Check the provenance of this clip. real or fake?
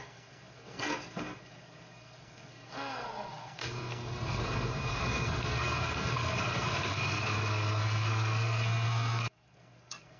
fake